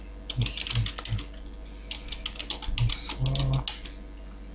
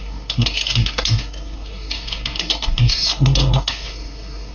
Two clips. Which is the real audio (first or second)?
first